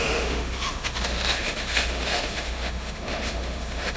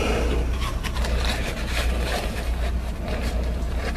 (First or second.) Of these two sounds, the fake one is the first